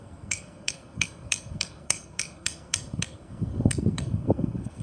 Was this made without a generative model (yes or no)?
no